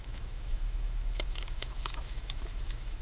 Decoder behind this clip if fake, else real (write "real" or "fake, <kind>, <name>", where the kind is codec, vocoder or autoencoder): fake, autoencoder, DAC-VAE